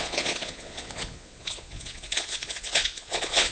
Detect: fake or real fake